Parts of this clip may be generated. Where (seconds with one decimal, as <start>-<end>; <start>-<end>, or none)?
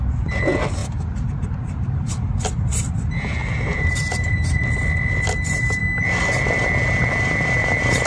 0.8-2.1; 3.4-4.6; 7.6-8.1